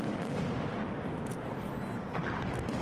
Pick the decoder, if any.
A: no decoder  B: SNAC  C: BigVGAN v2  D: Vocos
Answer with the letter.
A